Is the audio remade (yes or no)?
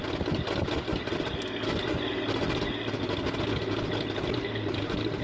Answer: no